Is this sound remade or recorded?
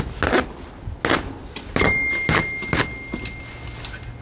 recorded